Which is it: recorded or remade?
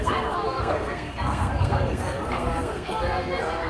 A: remade